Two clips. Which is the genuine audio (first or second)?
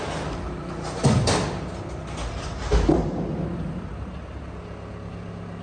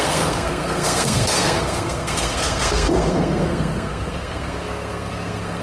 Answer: first